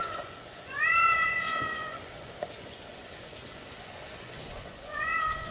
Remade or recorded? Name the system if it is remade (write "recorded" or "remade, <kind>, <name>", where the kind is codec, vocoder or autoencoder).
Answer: remade, vocoder, Vocos